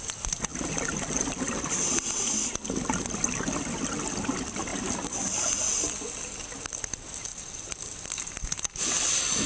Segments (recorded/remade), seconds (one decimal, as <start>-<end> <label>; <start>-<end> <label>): 0.0-7.3 recorded; 7.3-8.0 remade; 8.0-9.5 recorded